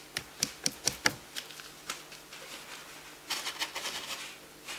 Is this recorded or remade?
recorded